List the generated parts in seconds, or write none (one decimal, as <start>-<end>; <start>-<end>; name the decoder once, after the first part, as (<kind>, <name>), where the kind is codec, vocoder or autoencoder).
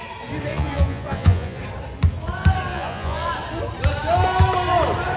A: 0.5-1.6 (vocoder, Vocos); 2.7-3.3